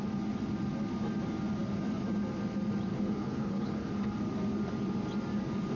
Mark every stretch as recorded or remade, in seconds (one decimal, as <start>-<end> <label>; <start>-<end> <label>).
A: 0.0-2.9 recorded; 2.9-3.9 remade; 3.9-5.8 recorded